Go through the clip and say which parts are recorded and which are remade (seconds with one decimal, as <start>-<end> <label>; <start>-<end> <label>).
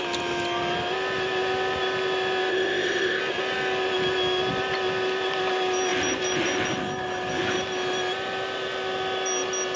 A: 0.0-2.5 recorded; 2.5-3.2 remade; 3.2-9.8 recorded